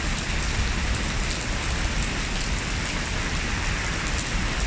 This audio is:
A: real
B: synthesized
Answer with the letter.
A